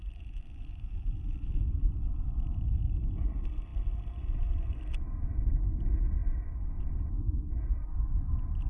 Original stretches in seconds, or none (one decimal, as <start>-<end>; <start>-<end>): 0.0-0.7; 2.1-8.7